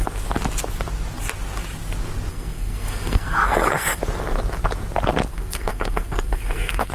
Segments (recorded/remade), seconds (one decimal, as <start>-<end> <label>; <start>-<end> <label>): 0.0-2.3 recorded; 2.3-4.0 remade; 4.0-5.3 recorded; 5.3-6.9 remade